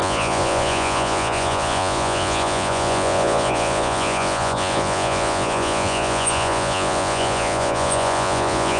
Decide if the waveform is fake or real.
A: fake